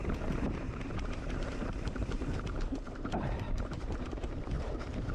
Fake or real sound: fake